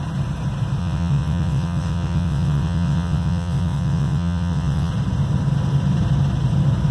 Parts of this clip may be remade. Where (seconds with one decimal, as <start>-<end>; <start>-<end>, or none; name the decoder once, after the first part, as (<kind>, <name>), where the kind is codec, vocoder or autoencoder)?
0.8-4.9 (vocoder, WaveNeXt)